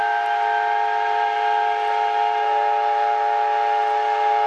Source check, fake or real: real